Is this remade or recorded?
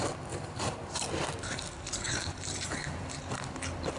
recorded